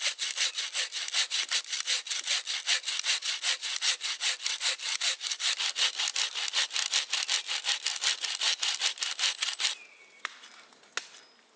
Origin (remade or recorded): recorded